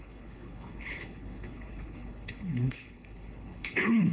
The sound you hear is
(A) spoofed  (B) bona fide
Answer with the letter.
A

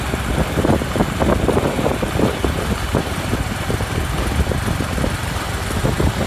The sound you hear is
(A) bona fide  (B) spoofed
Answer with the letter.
A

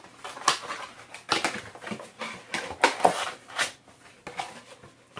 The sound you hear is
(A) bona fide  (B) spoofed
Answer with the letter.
A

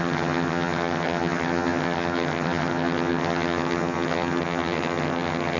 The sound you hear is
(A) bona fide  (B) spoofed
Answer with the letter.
B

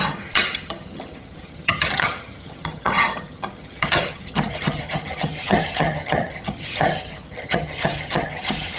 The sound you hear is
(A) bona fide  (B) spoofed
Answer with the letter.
B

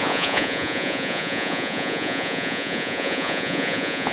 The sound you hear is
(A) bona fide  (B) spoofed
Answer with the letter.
B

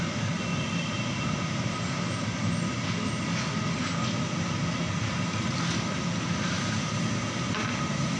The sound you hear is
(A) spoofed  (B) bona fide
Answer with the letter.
B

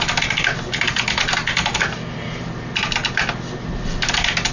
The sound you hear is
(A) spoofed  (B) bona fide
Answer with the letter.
B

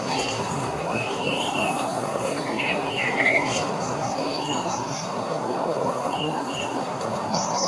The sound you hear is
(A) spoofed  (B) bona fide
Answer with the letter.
A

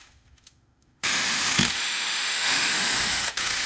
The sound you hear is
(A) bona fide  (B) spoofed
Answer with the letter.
B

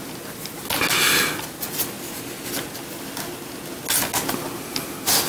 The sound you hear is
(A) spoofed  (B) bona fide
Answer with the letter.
B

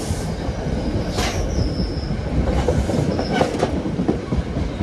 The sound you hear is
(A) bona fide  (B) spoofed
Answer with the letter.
A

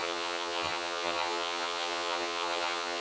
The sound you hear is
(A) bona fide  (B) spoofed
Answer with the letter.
B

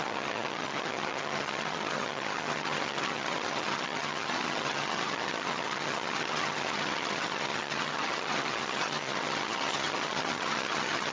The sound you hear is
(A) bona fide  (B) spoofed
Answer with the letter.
B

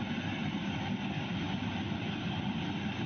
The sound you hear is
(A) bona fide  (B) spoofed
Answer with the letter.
A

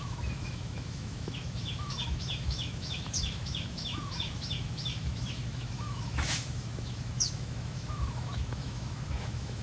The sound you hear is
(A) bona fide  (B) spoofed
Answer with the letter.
B